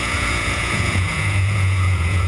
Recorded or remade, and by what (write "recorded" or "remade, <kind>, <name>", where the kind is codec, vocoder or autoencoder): remade, vocoder, Vocos